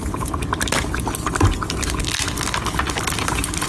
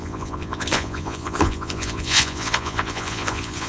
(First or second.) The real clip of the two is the first